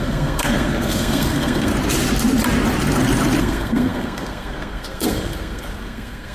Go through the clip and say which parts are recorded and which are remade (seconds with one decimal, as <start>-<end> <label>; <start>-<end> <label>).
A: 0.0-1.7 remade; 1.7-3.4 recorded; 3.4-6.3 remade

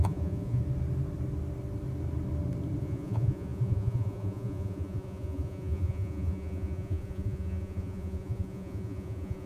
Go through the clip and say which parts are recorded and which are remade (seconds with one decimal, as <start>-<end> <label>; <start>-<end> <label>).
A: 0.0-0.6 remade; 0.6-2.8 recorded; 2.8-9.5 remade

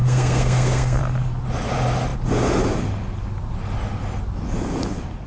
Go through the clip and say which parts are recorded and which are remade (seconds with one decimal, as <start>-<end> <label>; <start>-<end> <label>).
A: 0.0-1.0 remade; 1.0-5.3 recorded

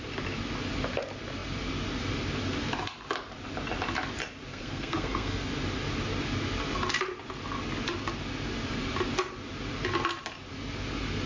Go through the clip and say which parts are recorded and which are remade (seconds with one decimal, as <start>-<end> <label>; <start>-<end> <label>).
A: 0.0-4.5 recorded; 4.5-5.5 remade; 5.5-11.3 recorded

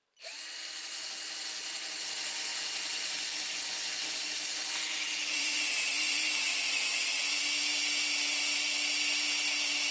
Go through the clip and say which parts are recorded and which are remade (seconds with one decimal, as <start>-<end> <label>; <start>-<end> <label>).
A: 0.0-2.5 recorded; 2.5-4.2 remade; 4.2-5.3 recorded; 5.3-7.1 remade; 7.1-9.9 recorded

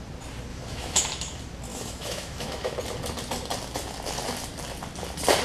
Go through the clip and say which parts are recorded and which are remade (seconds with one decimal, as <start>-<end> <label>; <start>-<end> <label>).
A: 0.0-0.5 recorded; 0.5-1.0 remade; 1.0-1.7 recorded; 1.7-2.8 remade; 2.8-5.4 recorded